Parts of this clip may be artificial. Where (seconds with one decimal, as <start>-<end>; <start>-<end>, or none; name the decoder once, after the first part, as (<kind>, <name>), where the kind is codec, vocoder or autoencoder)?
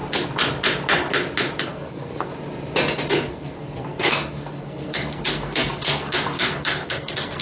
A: 1.6-2.3 (codec, SNAC); 3.1-7.4